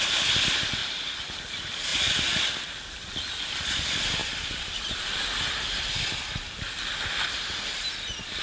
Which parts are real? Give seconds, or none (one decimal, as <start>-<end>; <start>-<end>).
0.0-1.9; 2.6-4.2; 5.0-8.4